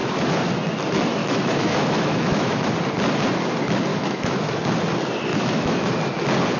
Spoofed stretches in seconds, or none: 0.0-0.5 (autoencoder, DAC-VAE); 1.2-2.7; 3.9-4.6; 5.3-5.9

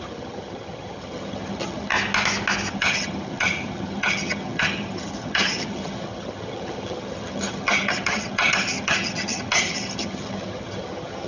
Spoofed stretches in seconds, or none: 0.0-1.9 (vocoder, HiFi-GAN); 2.7-11.3

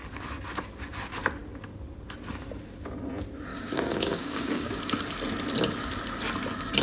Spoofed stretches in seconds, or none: 3.5-4.8 (codec, DAC)

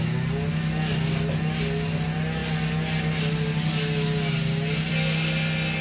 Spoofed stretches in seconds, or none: none

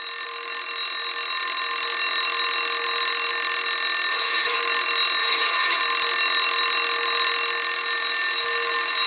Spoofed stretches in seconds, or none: 4.1-4.6 (vocoder, HiFi-GAN); 5.2-5.8

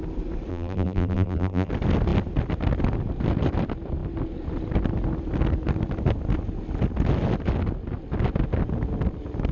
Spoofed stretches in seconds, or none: 0.5-1.7 (vocoder, BigVGAN v2)

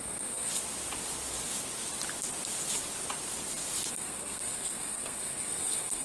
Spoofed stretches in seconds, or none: 0.0-0.5 (codec, SNAC); 3.9-6.0